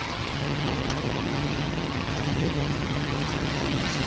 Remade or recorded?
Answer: remade